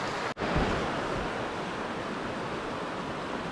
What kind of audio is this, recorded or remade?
recorded